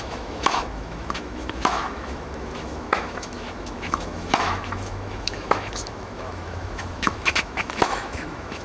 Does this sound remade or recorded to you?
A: remade